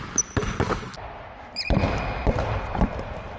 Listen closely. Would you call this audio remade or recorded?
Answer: recorded